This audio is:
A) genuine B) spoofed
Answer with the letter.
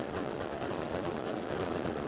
B